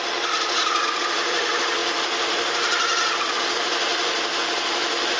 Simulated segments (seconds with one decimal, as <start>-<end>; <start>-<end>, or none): 0.0-5.2